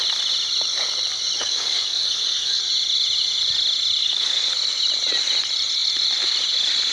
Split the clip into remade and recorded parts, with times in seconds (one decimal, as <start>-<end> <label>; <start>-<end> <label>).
0.0-1.4 recorded; 1.4-2.6 remade; 2.6-4.0 recorded; 4.0-4.5 remade; 4.5-6.9 recorded